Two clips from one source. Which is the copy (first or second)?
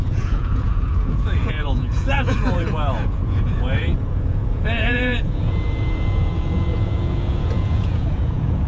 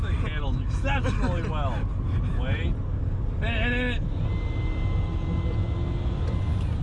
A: first